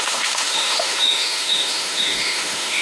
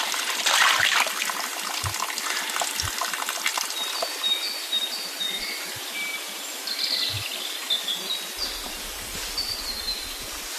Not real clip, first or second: first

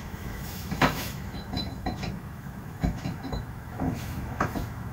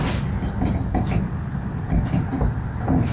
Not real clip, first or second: first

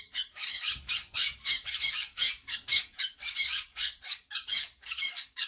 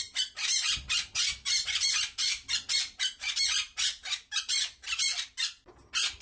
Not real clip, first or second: first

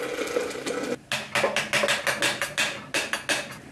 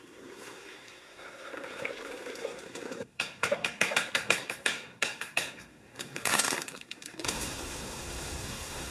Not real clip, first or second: second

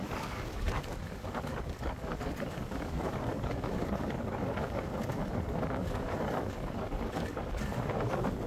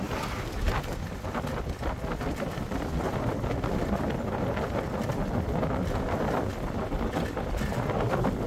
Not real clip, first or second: first